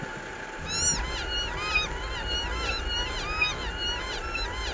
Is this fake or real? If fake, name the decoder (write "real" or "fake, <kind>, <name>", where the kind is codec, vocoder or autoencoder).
real